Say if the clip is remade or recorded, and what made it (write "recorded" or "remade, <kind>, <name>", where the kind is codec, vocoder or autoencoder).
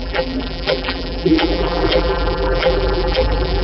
remade, vocoder, BigVGAN v2